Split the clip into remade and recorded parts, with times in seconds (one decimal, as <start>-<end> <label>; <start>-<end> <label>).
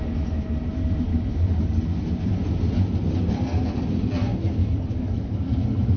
0.0-1.1 recorded; 1.1-1.8 remade; 1.8-4.6 recorded; 4.6-6.0 remade